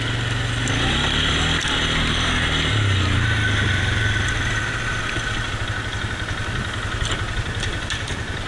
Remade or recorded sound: recorded